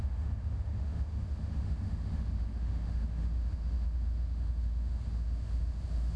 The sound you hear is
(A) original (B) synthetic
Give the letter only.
B